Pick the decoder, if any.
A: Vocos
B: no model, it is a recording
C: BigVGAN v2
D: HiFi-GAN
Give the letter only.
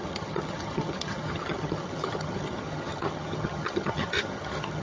D